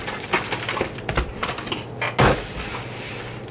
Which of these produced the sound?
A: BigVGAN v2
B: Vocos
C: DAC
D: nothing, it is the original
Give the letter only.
D